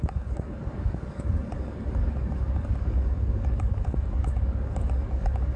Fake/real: fake